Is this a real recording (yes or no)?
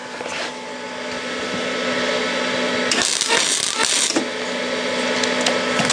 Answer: yes